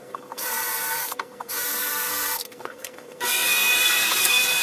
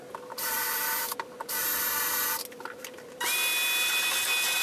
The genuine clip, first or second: second